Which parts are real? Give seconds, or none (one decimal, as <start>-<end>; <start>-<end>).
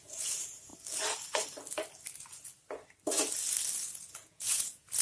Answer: 0.7-3.7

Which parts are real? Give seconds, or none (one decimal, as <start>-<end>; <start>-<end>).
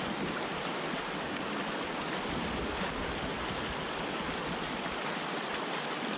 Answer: 0.0-6.2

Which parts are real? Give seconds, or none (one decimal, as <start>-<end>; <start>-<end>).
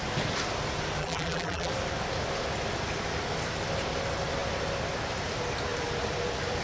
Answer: 0.0-1.0; 1.7-6.6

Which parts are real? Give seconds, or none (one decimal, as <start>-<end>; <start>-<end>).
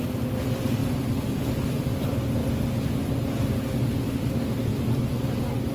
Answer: 2.4-4.3; 4.7-5.7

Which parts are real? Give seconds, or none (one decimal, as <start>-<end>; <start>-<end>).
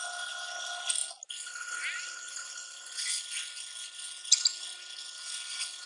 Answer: 0.0-5.9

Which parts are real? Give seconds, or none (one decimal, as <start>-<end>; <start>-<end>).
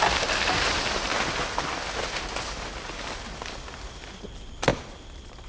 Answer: 1.1-4.3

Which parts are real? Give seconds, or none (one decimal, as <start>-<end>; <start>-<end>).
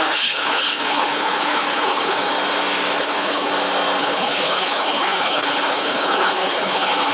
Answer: 2.3-3.0; 3.5-4.0